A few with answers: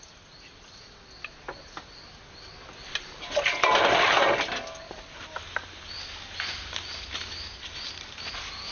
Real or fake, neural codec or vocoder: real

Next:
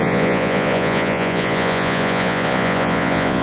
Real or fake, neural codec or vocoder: fake, vocoder, Vocos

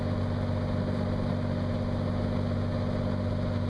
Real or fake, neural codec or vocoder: real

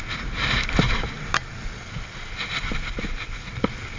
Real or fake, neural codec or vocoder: real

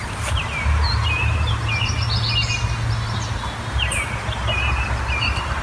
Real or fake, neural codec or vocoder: real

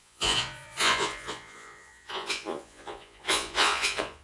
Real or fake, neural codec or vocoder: fake, vocoder, Vocos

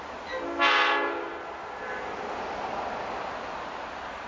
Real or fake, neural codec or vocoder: real